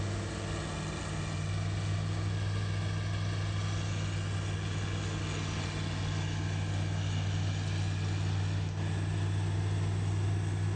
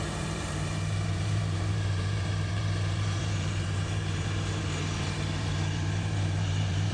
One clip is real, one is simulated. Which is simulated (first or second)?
second